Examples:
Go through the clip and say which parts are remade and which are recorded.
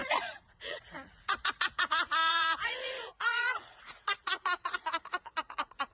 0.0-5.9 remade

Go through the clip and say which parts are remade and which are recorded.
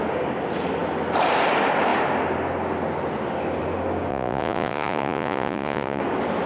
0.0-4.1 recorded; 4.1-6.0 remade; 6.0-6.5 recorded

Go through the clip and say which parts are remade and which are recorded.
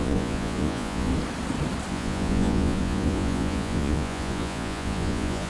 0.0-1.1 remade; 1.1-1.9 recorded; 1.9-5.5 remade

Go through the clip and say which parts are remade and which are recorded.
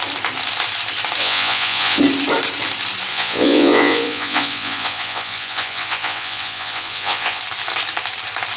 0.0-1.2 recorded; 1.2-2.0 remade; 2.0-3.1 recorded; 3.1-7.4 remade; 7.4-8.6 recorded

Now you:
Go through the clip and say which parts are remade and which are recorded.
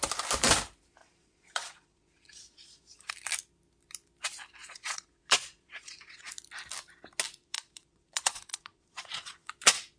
0.0-1.0 recorded; 1.0-3.1 remade; 3.1-4.6 recorded; 4.6-6.3 remade; 6.3-7.4 recorded; 7.4-9.5 remade; 9.5-10.0 recorded